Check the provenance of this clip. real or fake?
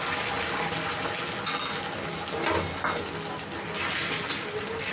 real